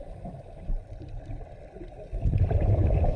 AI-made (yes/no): yes